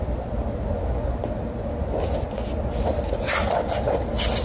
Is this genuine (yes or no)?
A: yes